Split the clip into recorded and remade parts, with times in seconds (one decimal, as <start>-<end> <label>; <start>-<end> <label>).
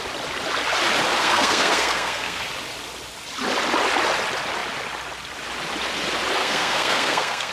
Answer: 0.0-1.2 recorded; 1.2-2.5 remade; 2.5-6.4 recorded; 6.4-7.5 remade